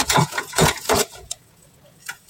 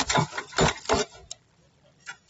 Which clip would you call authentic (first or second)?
second